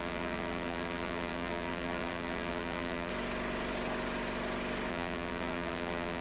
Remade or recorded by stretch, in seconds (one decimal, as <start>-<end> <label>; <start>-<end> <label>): 0.0-3.1 remade; 3.1-4.9 recorded; 4.9-6.2 remade